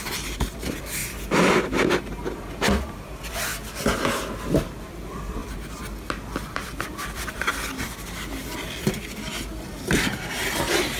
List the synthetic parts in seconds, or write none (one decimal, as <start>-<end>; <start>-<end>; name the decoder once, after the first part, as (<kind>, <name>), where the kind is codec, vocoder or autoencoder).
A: 0.0-1.0 (vocoder, BigVGAN v2); 2.9-3.5; 4.8-5.4; 6.3-7.5